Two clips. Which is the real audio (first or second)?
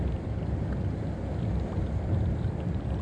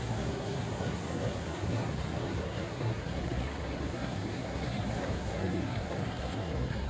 first